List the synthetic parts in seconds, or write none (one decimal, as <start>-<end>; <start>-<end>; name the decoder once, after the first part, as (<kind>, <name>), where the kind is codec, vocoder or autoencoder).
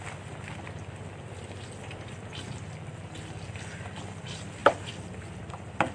none